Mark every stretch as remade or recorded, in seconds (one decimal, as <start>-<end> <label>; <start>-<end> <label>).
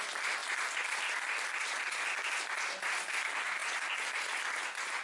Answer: 0.0-5.0 recorded